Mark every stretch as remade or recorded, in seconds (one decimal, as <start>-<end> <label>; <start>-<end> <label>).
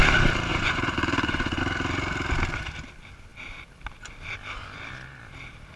0.0-0.5 recorded; 0.5-1.6 remade; 1.6-5.8 recorded